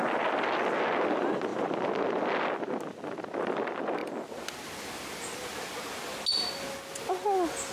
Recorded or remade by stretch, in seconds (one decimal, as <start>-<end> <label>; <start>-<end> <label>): 0.0-7.7 recorded